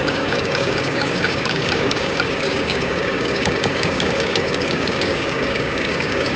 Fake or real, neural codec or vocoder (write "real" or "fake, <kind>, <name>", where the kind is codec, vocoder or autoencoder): fake, codec, DAC